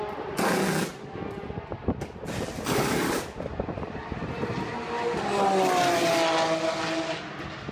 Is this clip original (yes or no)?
yes